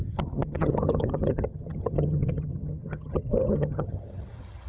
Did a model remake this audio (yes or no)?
yes